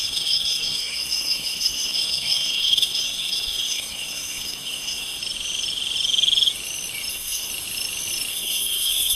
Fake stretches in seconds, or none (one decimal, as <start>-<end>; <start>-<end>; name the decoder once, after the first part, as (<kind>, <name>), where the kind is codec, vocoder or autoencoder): 0.0-5.2 (codec, SNAC); 7.1-7.5; 8.3-9.2